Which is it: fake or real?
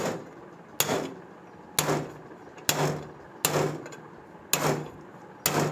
real